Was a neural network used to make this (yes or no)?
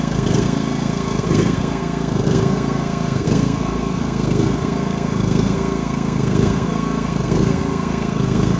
yes